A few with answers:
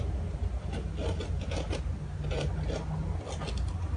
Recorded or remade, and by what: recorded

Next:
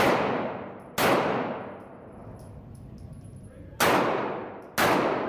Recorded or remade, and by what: recorded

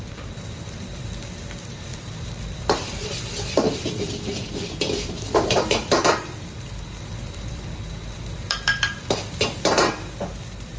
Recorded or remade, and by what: remade, vocoder, BigVGAN v2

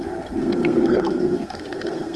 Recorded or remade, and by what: remade, codec, SNAC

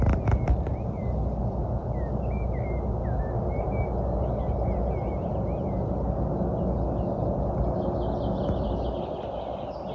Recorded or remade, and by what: recorded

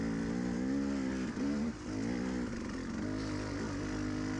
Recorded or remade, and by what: recorded